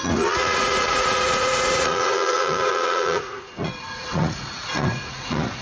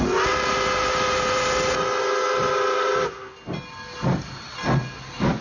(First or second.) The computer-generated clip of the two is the first